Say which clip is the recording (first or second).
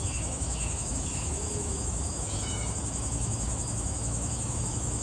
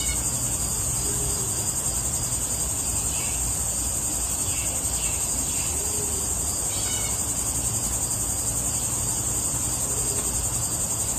second